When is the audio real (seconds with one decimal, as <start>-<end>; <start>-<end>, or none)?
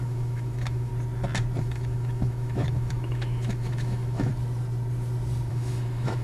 0.9-1.6; 4.3-5.5